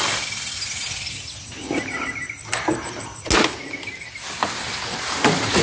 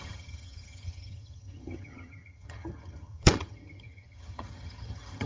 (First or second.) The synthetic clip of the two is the second